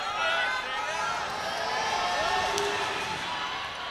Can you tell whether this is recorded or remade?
recorded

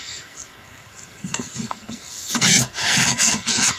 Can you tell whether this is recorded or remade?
remade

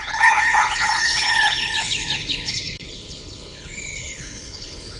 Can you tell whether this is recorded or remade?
remade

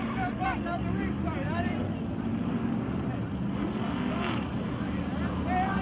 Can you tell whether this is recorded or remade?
recorded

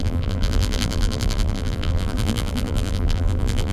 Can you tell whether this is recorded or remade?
remade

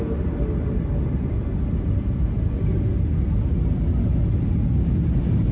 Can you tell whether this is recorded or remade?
recorded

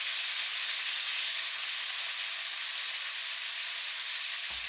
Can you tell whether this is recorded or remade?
recorded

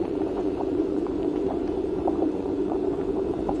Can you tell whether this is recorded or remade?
remade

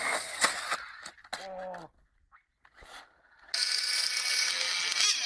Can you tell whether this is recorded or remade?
recorded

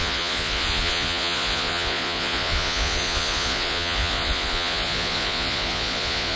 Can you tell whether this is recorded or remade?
remade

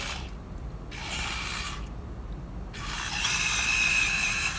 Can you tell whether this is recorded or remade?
recorded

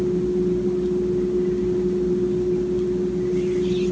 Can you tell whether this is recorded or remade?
recorded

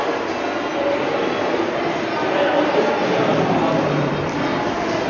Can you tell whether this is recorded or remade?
recorded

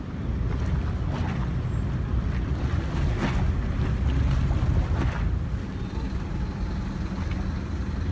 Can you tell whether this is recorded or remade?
recorded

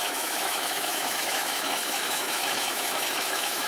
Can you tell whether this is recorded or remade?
remade